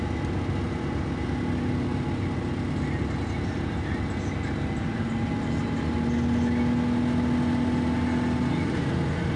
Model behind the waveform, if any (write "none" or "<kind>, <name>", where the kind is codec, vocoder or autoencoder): none